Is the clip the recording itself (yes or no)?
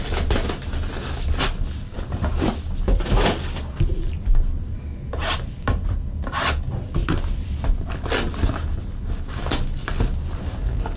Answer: yes